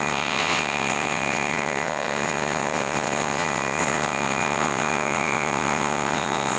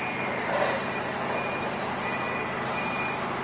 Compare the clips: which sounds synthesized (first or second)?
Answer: first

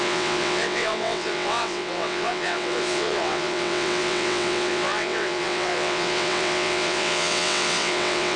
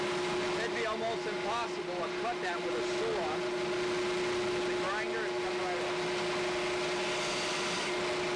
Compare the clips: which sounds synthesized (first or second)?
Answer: first